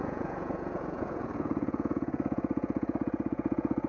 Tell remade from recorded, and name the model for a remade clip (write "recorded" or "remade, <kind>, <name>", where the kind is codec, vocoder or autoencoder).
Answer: remade, vocoder, Vocos